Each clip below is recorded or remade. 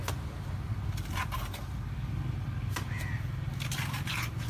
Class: recorded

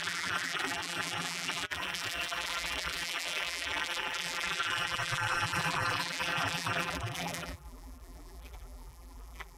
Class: remade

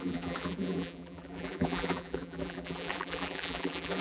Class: remade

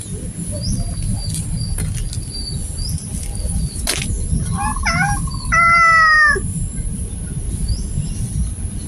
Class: recorded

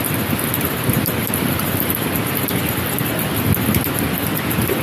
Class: recorded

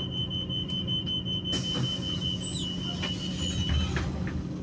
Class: recorded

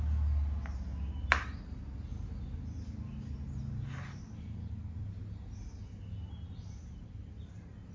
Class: recorded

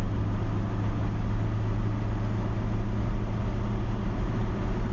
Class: recorded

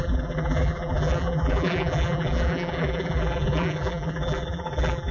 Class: remade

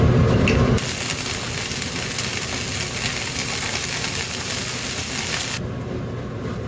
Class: recorded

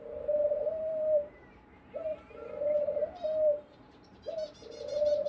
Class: remade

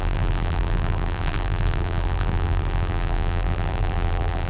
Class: remade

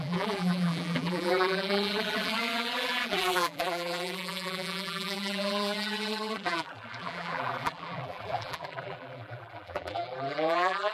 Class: remade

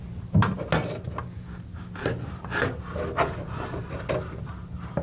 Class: recorded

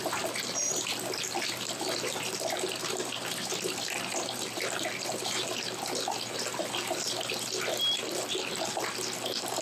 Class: recorded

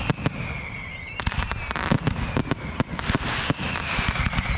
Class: recorded